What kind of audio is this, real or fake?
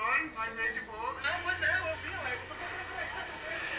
real